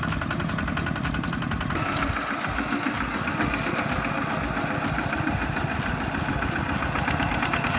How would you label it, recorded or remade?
recorded